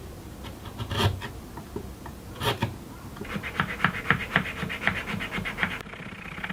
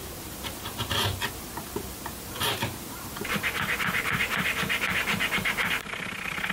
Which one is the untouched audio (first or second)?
first